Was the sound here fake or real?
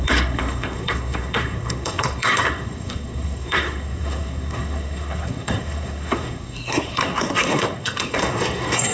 fake